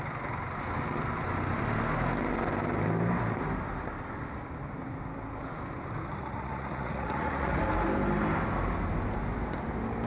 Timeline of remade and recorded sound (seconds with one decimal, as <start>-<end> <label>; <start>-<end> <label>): 0.0-6.2 recorded; 6.2-7.6 remade; 7.6-10.1 recorded